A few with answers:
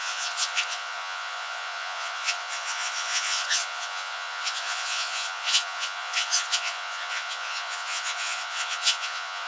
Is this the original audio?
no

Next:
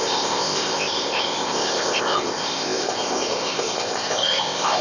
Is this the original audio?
no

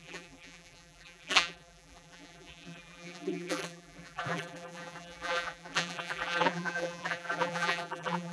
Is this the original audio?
no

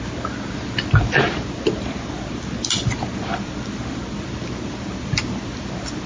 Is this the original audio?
yes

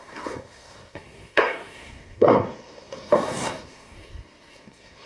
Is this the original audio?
no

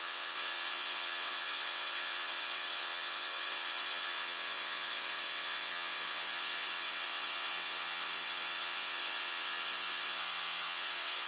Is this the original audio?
no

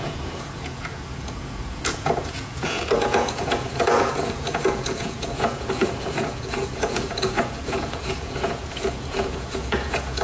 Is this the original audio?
no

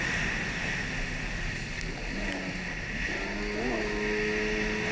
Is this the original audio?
yes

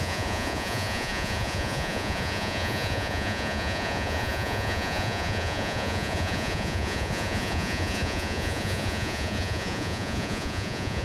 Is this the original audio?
no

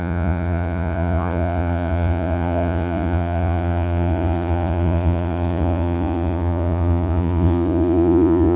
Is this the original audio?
no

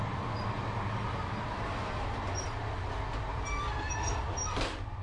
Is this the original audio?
yes